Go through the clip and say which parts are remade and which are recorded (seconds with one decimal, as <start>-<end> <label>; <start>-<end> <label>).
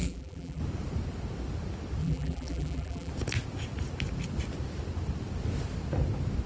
0.0-0.6 remade; 0.6-2.0 recorded; 2.0-3.1 remade; 3.1-6.5 recorded